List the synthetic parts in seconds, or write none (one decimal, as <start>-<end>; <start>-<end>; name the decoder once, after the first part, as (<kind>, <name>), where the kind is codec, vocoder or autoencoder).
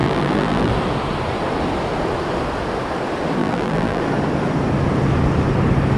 0.0-0.7 (vocoder, BigVGAN v2); 3.4-4.0